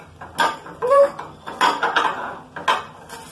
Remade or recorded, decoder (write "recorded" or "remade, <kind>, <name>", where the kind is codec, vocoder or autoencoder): recorded